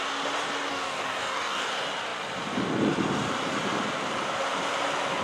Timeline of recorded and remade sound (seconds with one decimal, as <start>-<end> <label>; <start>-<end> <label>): 0.0-0.7 recorded; 0.7-1.7 remade; 1.7-5.2 recorded